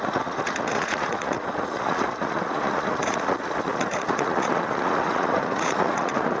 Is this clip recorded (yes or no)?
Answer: no